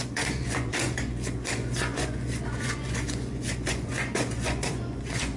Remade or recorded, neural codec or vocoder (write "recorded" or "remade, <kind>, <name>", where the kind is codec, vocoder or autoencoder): remade, vocoder, Vocos